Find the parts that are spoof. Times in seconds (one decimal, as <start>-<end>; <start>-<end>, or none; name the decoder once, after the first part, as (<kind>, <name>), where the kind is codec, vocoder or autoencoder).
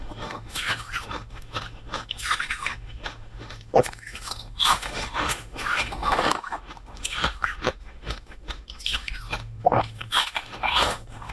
0.0-11.3 (autoencoder, DAC-VAE)